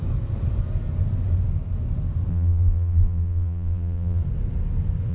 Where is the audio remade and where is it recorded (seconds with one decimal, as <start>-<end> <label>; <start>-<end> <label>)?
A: 0.0-2.3 recorded; 2.3-4.2 remade; 4.2-5.1 recorded